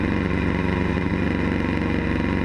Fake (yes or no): no